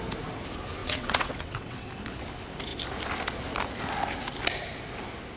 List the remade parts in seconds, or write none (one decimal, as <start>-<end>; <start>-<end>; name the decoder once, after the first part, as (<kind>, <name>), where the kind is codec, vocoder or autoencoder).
0.8-1.9 (vocoder, WaveNeXt)